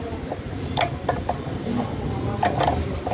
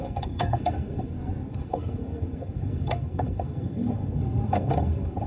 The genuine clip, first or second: first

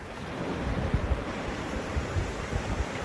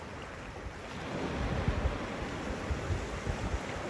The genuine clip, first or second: second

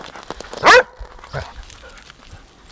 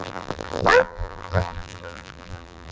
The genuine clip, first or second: first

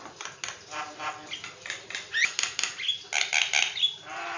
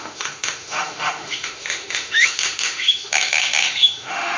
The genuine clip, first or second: first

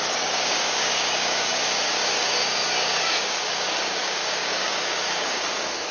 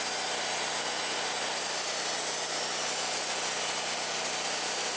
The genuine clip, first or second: second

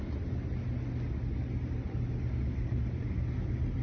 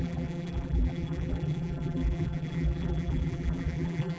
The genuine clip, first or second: first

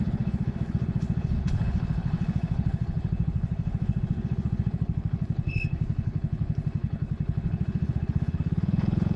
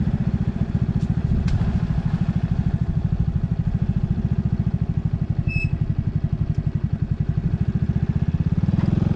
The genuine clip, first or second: second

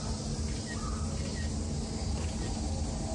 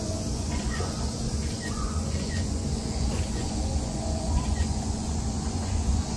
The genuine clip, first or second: first